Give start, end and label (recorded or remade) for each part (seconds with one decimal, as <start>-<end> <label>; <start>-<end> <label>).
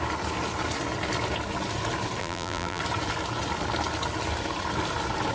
0.0-2.2 recorded; 2.2-2.8 remade; 2.8-5.3 recorded